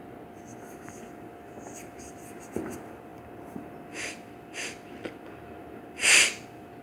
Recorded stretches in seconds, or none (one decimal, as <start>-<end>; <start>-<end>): 0.0-6.8